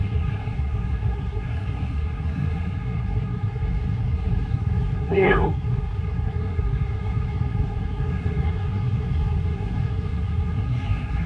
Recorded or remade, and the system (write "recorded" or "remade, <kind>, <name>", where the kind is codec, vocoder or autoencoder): remade, codec, SNAC